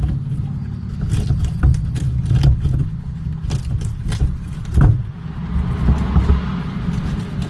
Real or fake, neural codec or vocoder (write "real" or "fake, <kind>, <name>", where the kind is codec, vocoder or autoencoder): real